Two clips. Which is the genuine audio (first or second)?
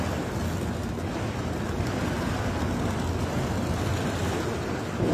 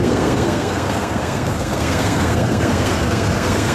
first